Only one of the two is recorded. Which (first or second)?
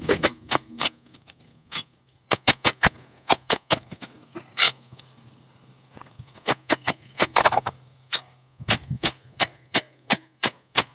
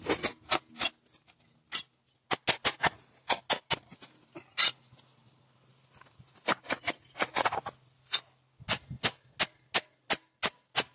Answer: second